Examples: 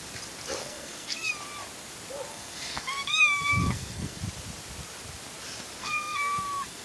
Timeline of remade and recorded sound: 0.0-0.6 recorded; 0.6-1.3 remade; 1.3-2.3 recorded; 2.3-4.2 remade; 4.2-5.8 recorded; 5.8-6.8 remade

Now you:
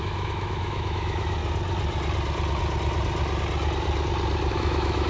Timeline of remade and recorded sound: 0.0-1.4 remade; 1.4-4.5 recorded; 4.5-5.1 remade

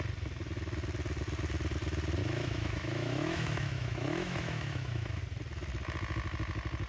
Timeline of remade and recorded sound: 0.0-2.2 recorded; 2.2-5.2 remade; 5.2-6.9 recorded

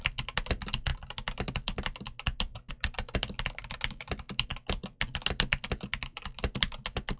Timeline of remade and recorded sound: 0.0-7.2 recorded